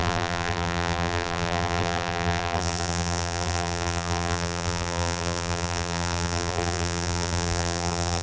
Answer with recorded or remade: remade